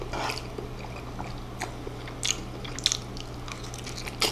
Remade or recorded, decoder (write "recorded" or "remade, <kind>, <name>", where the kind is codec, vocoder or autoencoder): recorded